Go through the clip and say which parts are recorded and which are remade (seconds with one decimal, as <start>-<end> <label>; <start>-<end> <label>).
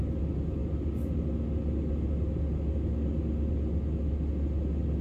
0.0-5.0 recorded